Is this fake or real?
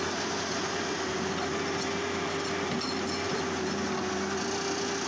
real